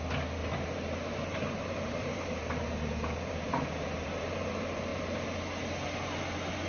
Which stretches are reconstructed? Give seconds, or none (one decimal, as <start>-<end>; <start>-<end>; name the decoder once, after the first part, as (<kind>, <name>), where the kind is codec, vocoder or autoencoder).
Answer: 0.4-4.4 (vocoder, BigVGAN v2)